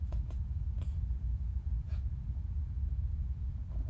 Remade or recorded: remade